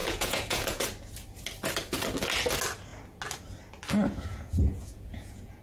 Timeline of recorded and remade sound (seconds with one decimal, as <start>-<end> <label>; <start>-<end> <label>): 0.0-0.8 remade; 0.8-4.3 recorded; 4.3-5.6 remade